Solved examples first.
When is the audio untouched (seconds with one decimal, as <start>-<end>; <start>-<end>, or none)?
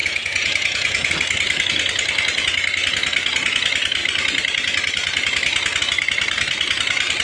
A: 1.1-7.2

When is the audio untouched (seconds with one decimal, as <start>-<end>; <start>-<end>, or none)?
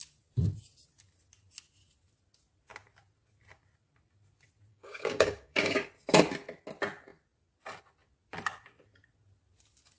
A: 0.0-4.7; 5.9-10.0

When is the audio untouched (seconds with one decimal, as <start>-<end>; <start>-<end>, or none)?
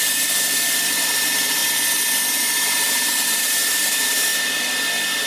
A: 1.6-2.3; 4.3-5.3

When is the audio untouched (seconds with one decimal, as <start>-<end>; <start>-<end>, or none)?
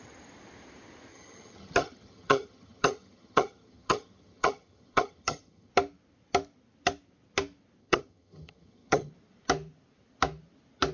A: 0.0-1.1; 5.7-7.8; 9.1-10.9